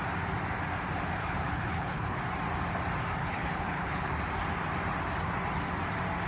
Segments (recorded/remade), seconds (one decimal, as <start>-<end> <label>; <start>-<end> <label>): 0.0-1.2 recorded; 1.2-2.2 remade; 2.2-3.2 recorded; 3.2-4.1 remade; 4.1-6.3 recorded